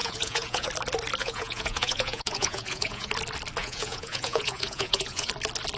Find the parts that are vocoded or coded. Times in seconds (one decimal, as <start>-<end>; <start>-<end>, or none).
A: 0.0-0.7; 1.2-3.1; 3.6-5.3